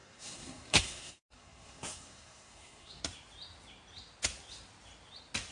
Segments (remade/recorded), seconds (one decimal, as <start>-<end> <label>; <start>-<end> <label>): 0.0-3.0 remade; 3.0-5.5 recorded